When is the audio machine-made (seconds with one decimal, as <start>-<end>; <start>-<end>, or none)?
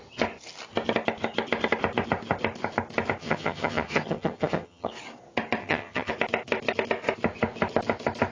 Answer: 3.2-4.9; 5.6-6.1